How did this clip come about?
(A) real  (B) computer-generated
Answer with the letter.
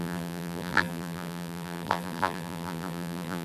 B